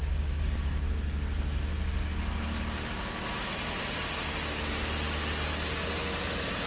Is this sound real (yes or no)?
yes